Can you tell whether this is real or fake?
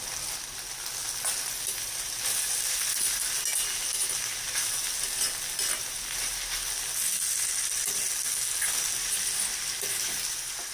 real